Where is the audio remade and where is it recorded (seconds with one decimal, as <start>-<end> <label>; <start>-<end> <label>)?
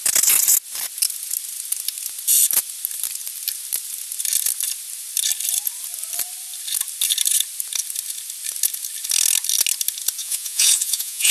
0.0-10.2 recorded; 10.2-11.3 remade